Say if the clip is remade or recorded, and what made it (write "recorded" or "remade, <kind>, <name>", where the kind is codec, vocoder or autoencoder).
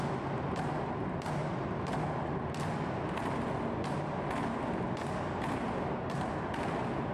recorded